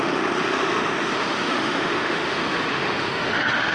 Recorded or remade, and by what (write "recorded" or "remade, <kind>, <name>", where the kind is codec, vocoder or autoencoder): remade, autoencoder, DAC-VAE